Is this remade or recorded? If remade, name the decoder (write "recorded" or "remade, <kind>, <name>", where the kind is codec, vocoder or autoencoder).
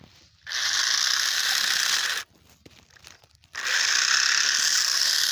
recorded